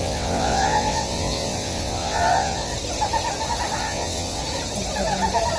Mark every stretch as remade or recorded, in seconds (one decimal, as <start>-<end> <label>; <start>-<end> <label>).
0.0-2.7 remade; 2.7-3.8 recorded; 3.8-4.4 remade; 4.4-5.6 recorded